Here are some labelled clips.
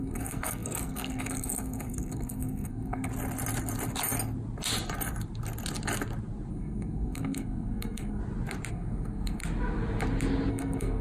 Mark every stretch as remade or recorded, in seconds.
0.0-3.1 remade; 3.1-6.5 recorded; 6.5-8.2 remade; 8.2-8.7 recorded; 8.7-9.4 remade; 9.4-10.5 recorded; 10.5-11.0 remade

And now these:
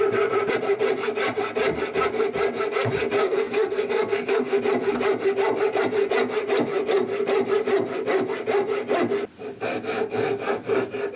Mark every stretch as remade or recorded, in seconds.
0.0-3.2 recorded; 3.2-4.6 remade; 4.6-11.2 recorded

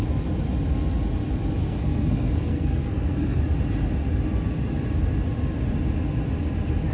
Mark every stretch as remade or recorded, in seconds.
0.0-1.6 recorded; 1.6-3.4 remade; 3.4-6.9 recorded

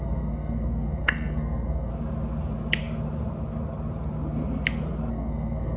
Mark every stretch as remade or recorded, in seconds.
0.0-1.9 remade; 1.9-5.1 recorded; 5.1-5.8 remade